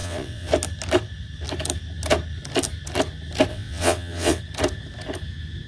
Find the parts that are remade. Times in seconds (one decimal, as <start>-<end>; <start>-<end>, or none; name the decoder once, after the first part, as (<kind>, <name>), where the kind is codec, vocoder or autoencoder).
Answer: 0.0-0.5 (vocoder, WaveNeXt); 3.5-4.4